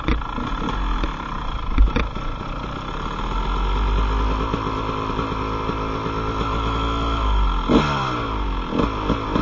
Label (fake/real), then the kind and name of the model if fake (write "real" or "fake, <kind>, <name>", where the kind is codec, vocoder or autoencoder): real